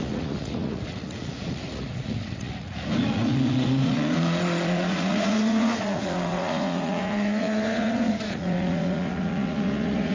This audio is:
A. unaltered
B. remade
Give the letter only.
B